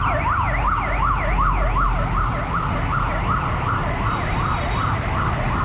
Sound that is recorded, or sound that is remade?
recorded